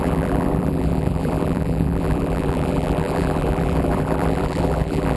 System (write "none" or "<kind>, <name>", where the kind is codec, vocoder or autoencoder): vocoder, BigVGAN v2